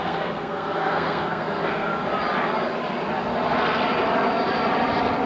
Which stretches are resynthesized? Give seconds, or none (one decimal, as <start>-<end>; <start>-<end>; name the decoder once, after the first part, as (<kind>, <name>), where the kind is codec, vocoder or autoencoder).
0.0-1.9 (codec, SNAC)